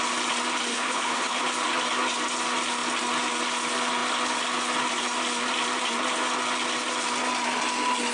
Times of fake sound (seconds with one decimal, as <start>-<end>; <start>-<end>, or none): 0.7-1.4